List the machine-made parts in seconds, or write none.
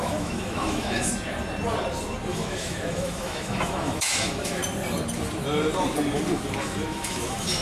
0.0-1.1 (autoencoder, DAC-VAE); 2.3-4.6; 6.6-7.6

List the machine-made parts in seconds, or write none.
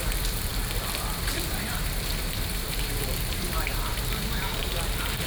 0.0-0.5 (vocoder, BigVGAN v2); 1.0-5.3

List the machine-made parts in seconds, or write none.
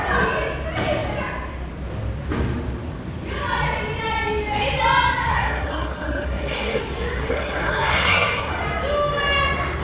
5.3-6.8 (codec, SNAC); 7.2-8.5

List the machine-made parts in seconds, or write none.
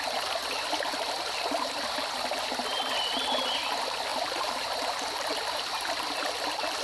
4.1-4.7 (vocoder, BigVGAN v2)